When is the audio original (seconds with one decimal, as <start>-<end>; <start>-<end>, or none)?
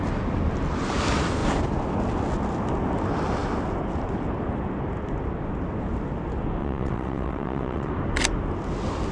0.0-6.6; 7.9-9.1